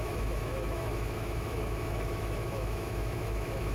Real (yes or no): no